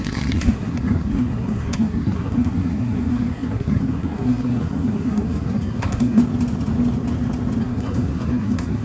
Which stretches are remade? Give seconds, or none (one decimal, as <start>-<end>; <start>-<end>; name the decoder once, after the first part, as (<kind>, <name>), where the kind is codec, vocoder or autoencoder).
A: 0.0-6.2 (codec, SNAC); 7.6-8.8